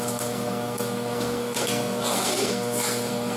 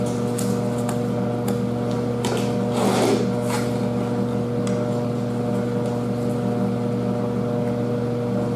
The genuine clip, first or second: second